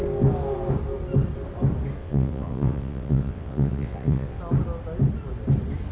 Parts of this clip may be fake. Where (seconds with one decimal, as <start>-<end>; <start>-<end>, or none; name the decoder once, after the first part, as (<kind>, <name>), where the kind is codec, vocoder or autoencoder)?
2.0-4.4 (vocoder, WaveNeXt)